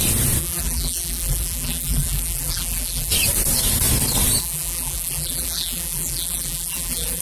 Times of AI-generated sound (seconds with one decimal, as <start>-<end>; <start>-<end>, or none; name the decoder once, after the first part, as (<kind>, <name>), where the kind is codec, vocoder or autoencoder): 0.4-3.1 (vocoder, BigVGAN v2); 4.4-7.2